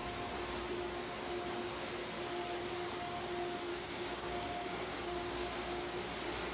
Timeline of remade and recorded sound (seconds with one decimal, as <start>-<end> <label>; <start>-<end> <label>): 0.0-3.7 recorded; 3.7-6.0 remade; 6.0-6.5 recorded